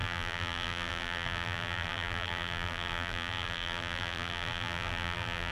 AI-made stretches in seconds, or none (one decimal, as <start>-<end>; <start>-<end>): 0.0-5.5